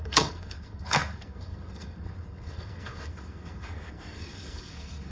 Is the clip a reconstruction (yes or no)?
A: yes